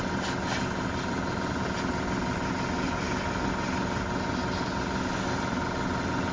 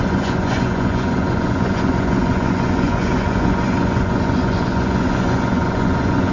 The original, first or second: first